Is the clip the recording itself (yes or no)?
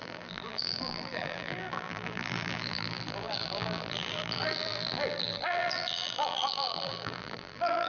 no